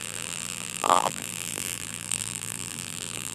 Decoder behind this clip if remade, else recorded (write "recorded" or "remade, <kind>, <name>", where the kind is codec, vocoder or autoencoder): remade, vocoder, BigVGAN v2